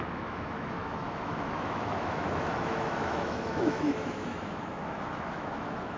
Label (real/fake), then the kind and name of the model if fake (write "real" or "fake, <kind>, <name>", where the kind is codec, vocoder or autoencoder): fake, autoencoder, DAC-VAE